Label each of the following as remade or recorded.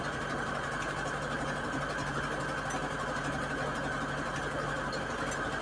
recorded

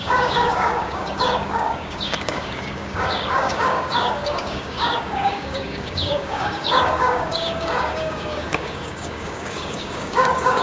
remade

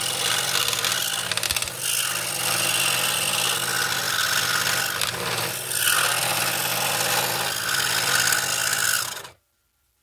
recorded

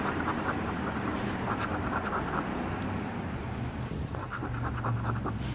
remade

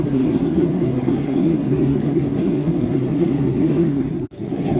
remade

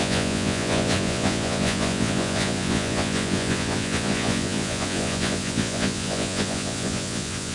remade